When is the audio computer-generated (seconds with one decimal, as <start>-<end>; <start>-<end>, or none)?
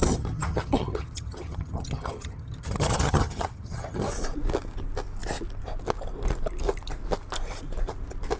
0.0-4.1